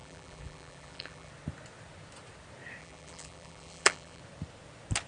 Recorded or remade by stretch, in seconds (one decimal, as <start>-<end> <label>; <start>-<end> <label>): 0.0-1.3 remade; 1.3-2.8 recorded; 2.8-4.2 remade; 4.2-5.1 recorded

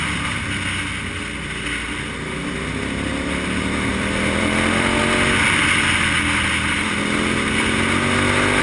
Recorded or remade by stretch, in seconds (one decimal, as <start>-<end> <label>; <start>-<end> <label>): 0.0-3.9 recorded; 3.9-5.0 remade; 5.0-8.6 recorded

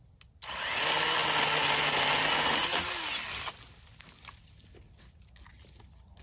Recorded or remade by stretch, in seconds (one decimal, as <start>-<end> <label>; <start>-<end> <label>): 0.0-6.2 recorded

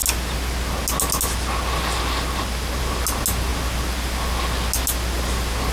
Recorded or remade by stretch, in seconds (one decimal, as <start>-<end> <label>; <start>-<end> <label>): 0.0-5.7 recorded